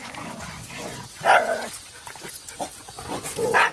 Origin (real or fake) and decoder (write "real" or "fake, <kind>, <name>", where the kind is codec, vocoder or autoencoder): fake, vocoder, Vocos